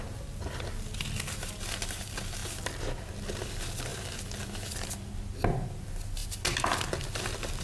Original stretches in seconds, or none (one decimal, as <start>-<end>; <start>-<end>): 0.0-7.6